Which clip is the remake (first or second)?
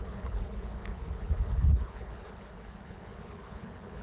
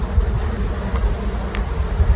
first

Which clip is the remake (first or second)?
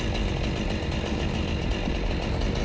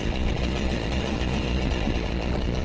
second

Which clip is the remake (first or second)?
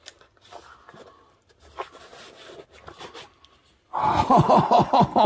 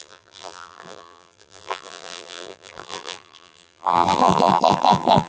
second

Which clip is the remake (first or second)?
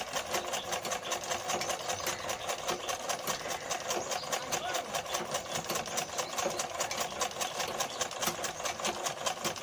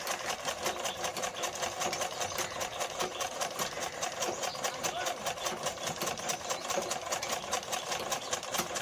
second